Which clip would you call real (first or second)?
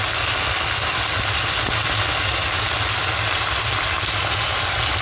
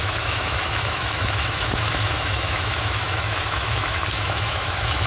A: first